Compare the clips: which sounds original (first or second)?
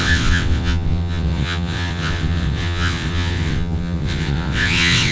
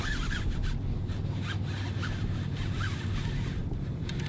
second